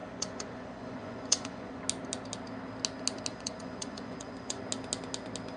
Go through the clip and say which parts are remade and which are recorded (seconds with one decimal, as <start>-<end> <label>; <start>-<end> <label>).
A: 0.0-1.8 remade; 1.8-3.3 recorded; 3.3-4.6 remade; 4.6-5.6 recorded